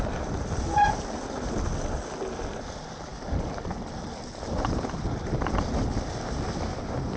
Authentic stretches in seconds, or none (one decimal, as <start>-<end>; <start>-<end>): 0.0-7.2